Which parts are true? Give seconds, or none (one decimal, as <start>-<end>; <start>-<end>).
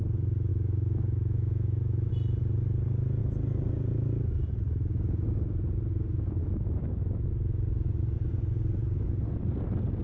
0.0-0.5; 2.1-6.4; 7.3-10.0